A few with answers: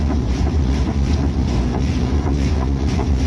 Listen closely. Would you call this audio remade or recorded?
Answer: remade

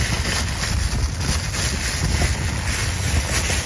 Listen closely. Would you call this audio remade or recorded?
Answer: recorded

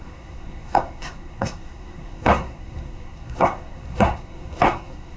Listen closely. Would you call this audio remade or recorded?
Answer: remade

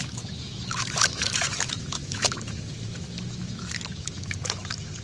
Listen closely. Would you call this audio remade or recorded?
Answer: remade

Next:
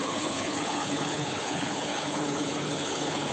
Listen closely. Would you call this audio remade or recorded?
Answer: remade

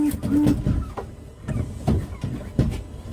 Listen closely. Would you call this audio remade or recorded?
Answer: recorded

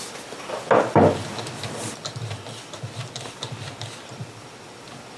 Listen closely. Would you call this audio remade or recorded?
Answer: recorded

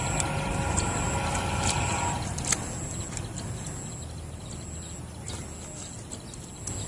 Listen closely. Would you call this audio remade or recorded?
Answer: recorded